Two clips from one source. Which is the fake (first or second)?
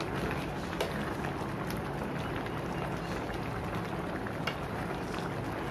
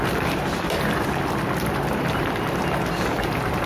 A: second